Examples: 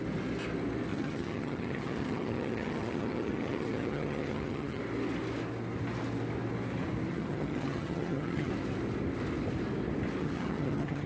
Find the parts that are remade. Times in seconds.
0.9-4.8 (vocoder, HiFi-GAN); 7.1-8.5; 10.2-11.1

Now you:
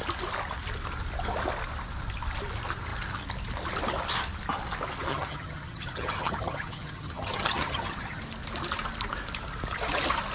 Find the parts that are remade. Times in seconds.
5.1-8.2 (vocoder, HiFi-GAN)

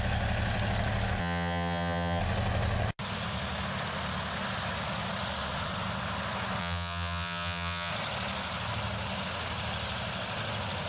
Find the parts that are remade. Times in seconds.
1.2-2.2 (vocoder, HiFi-GAN); 6.6-7.9

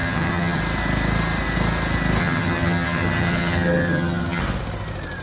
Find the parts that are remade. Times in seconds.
0.0-0.6 (vocoder, HiFi-GAN); 2.2-4.4